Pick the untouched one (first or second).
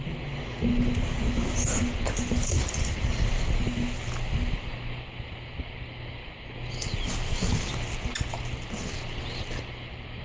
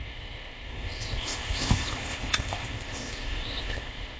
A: first